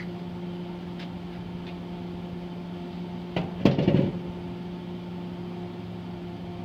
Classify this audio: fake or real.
real